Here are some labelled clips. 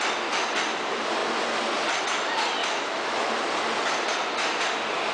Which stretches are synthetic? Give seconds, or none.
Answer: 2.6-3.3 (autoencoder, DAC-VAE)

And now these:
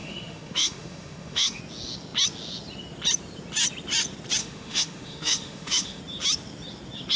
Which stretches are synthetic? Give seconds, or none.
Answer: 0.0-1.6 (autoencoder, DAC-VAE); 4.4-6.0